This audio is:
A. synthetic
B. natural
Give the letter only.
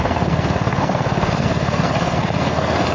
A